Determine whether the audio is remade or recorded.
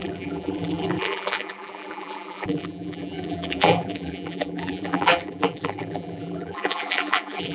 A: remade